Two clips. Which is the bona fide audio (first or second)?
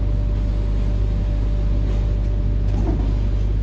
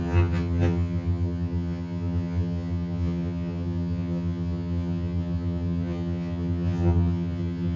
first